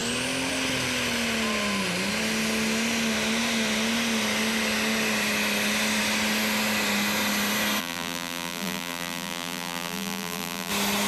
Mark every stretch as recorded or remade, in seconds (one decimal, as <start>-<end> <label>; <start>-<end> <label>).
0.0-7.8 recorded; 7.8-10.7 remade; 10.7-11.1 recorded